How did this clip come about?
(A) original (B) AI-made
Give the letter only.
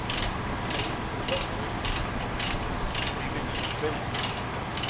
A